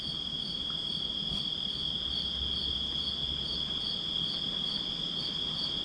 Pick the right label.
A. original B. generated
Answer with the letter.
A